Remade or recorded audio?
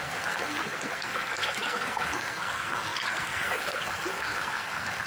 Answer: remade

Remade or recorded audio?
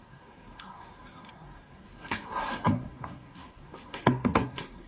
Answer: remade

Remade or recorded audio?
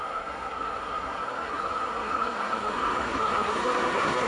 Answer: remade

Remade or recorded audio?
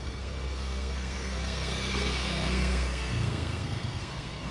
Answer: remade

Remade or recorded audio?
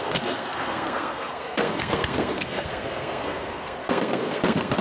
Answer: remade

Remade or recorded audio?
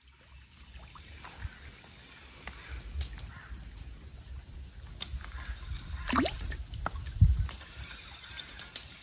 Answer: recorded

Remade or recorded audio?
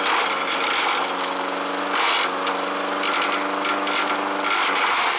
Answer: recorded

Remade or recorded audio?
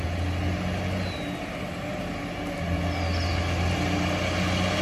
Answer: recorded